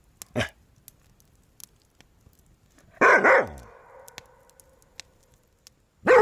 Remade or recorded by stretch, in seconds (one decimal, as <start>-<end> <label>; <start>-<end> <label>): 0.0-6.2 recorded